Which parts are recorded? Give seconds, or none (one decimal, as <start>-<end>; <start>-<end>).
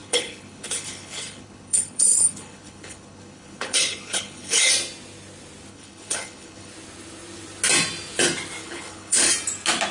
4.7-5.7; 6.7-8.6; 9.3-9.9